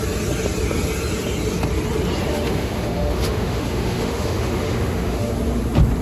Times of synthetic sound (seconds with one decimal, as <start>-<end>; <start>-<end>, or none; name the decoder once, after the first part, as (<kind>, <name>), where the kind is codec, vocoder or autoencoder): 2.3-5.3 (autoencoder, DAC-VAE)